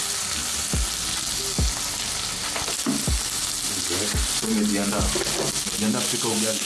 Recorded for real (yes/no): yes